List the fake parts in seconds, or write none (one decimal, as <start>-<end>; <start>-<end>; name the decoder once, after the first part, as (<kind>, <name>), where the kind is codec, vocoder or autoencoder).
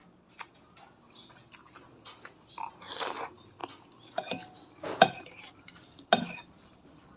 none